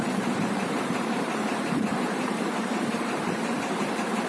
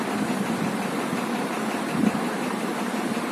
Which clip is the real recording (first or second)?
second